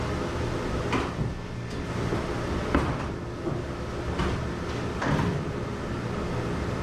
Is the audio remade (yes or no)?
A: no